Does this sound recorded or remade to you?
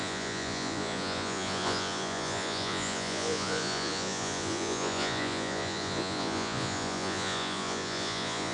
remade